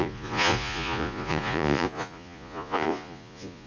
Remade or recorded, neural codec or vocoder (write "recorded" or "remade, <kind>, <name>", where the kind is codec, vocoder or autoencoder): remade, vocoder, Vocos